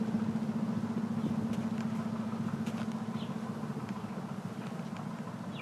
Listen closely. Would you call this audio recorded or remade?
recorded